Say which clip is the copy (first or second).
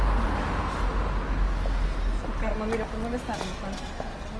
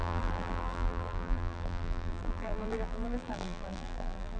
second